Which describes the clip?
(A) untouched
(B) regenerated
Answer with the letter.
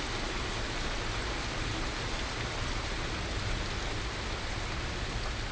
A